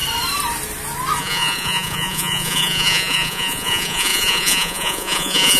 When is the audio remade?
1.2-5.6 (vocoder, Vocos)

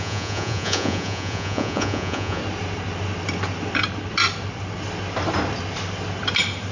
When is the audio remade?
0.0-2.4 (vocoder, Vocos)

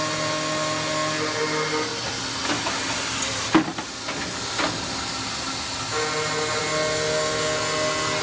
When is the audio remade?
none

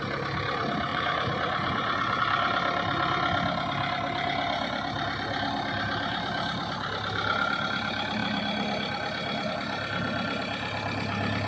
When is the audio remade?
0.9-2.2 (vocoder, Vocos)

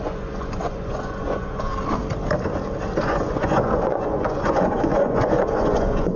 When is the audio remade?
0.0-1.7 (vocoder, Vocos); 3.0-6.2

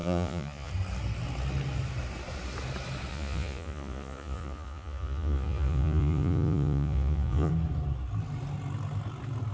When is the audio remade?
0.0-0.7 (vocoder, Vocos); 3.1-7.5

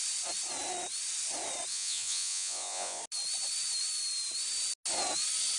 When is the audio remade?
1.7-3.0 (vocoder, Vocos)

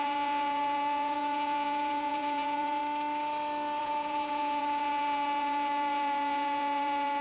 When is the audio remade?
0.0-2.8 (vocoder, Vocos); 3.8-7.2